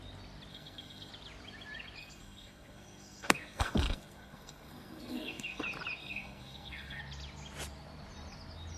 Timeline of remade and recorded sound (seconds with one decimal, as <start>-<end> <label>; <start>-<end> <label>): 0.0-0.5 recorded; 0.5-1.1 remade; 1.1-2.0 recorded; 2.0-5.6 remade; 5.6-6.0 recorded; 6.0-7.0 remade; 7.0-8.8 recorded